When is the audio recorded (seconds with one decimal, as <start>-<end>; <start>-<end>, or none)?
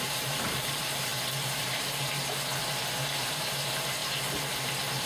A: 1.1-1.6; 2.6-3.2; 4.0-5.1